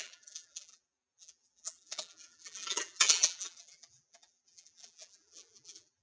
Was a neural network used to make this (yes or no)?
yes